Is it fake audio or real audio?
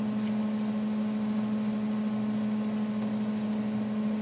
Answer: real